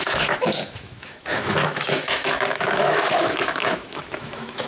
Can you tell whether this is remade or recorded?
remade